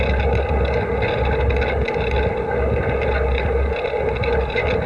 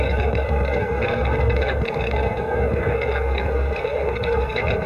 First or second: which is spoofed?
second